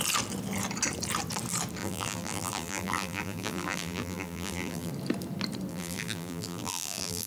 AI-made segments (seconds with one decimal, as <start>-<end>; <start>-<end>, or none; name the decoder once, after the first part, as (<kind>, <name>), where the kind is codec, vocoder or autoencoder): 1.8-4.9 (vocoder, BigVGAN v2); 5.7-7.3